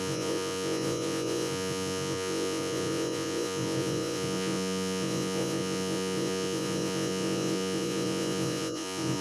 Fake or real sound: fake